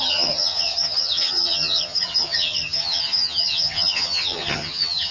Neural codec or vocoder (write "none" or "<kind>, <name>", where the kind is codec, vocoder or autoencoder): vocoder, HiFi-GAN